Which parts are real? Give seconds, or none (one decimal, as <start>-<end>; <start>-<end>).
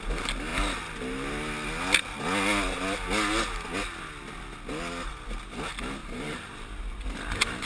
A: 0.0-6.0